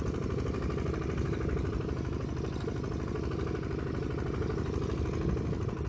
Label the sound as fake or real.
real